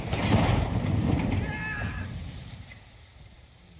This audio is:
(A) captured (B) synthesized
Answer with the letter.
B